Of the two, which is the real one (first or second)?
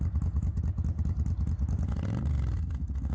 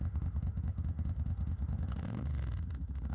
first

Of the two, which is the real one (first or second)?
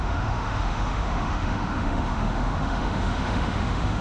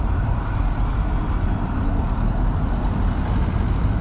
second